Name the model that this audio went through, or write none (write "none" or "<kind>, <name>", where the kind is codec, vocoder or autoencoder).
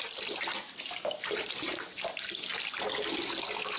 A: none